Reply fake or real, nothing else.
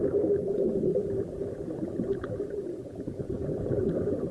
fake